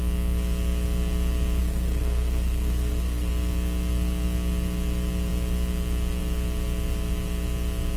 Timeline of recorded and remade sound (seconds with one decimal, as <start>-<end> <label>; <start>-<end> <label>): 0.0-1.6 recorded; 1.6-3.3 remade; 3.3-8.0 recorded